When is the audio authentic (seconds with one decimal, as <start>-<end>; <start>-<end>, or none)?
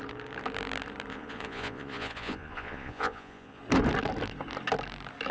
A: 0.0-1.1; 3.6-5.3